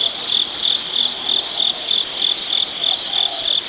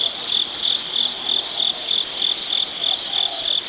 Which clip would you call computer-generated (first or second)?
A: first